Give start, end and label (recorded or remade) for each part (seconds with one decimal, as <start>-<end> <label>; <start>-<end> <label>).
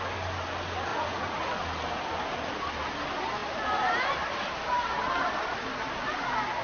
0.0-0.9 recorded; 0.9-1.5 remade; 1.5-6.6 recorded